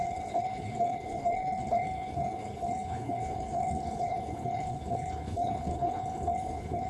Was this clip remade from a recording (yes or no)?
yes